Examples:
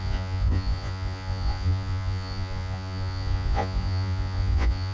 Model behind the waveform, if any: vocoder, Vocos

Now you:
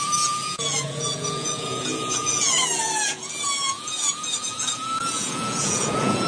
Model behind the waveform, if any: vocoder, Vocos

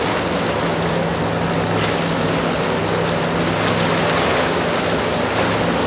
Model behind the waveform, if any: none